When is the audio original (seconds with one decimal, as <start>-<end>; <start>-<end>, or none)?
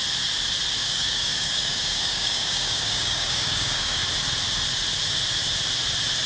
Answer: 0.0-0.8; 4.0-6.3